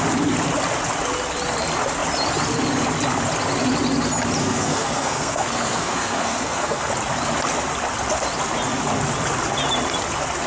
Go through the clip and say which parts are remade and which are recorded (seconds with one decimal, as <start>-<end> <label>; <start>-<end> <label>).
0.0-4.4 recorded; 4.4-6.9 remade; 6.9-10.5 recorded